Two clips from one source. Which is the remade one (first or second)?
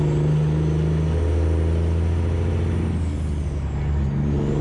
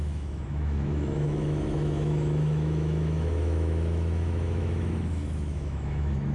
second